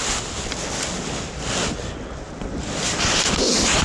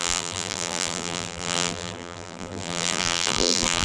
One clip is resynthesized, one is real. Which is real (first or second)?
first